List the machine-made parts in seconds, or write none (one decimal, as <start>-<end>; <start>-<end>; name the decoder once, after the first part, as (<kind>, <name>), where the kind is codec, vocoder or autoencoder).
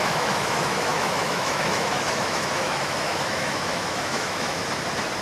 0.0-4.6 (autoencoder, DAC-VAE)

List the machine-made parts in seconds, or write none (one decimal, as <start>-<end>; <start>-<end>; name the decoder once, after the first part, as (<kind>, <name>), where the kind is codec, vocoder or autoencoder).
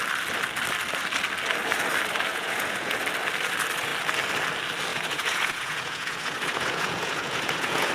2.3-3.0 (vocoder, Vocos); 4.9-7.9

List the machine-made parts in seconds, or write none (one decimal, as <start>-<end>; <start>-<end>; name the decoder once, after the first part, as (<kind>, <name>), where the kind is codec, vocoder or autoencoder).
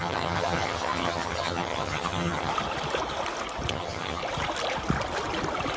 0.0-2.5 (vocoder, HiFi-GAN); 3.7-4.2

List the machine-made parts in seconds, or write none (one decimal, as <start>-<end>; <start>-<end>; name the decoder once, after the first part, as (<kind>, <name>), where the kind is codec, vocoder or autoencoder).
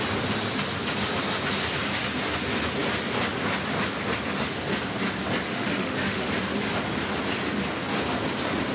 5.5-6.3 (autoencoder, DAC-VAE)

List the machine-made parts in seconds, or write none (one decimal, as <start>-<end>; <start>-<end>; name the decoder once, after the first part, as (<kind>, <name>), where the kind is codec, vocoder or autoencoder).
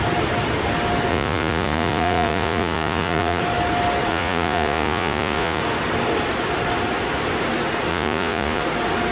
1.1-3.4 (vocoder, Vocos); 4.1-5.6; 7.9-8.6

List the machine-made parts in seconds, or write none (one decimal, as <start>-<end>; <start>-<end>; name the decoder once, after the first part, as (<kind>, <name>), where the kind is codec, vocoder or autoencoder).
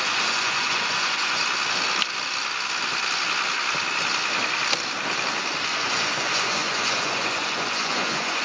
0.0-1.4 (vocoder, Vocos); 5.7-8.4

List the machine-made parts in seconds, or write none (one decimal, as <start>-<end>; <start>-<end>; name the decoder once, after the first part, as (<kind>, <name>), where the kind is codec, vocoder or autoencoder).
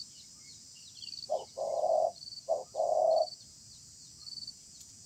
1.3-3.4 (vocoder, Vocos); 4.2-5.1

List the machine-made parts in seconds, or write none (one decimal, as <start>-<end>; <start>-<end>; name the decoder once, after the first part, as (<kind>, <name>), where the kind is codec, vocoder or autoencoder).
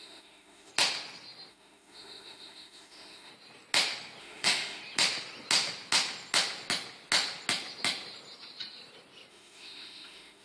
0.0-0.7 (autoencoder, DAC-VAE); 1.5-3.3; 4.2-4.8; 9.3-10.4